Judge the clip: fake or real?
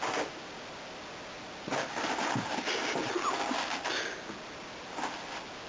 real